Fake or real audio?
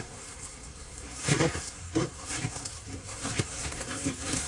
fake